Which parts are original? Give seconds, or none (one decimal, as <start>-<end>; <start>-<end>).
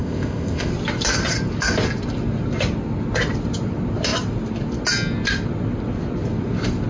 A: 0.7-6.9